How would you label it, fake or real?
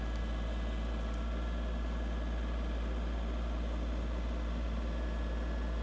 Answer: real